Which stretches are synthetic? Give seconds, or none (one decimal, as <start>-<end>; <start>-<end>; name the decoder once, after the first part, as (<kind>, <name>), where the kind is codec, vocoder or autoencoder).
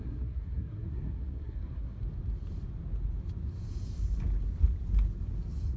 0.0-2.0 (codec, SNAC)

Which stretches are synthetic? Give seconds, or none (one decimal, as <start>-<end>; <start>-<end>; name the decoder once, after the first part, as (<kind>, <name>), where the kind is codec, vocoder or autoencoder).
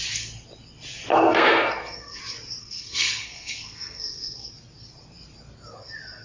1.1-2.2 (codec, SNAC); 2.6-4.5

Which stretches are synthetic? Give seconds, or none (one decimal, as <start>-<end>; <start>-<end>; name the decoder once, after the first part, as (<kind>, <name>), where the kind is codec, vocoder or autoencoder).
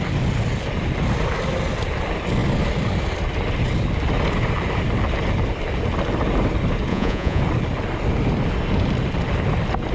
6.9-7.4 (vocoder, Vocos)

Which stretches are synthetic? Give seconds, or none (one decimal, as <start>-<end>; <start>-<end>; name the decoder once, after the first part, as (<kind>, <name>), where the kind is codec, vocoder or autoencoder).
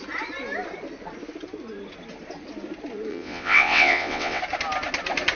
3.1-4.4 (vocoder, WaveNeXt)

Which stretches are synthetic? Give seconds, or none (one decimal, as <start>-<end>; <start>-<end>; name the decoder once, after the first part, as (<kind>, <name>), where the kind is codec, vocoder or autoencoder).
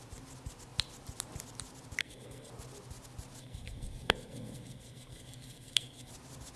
2.0-2.5 (codec, SNAC); 3.4-6.1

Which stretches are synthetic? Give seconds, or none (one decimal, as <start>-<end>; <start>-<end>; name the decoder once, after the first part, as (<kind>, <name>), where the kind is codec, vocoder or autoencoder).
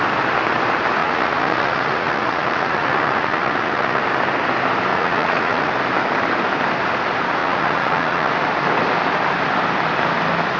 1.0-4.0 (vocoder, Vocos); 4.9-5.7; 7.4-8.3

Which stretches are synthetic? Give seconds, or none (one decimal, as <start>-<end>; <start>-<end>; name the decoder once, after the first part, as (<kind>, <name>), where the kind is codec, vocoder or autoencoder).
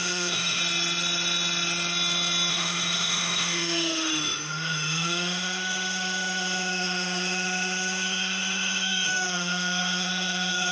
0.0-0.6 (autoencoder, DAC-VAE); 2.5-10.7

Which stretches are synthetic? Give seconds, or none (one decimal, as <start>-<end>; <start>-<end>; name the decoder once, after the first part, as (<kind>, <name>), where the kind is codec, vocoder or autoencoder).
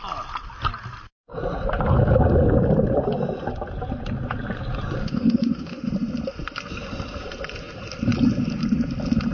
5.0-5.9 (autoencoder, DAC-VAE)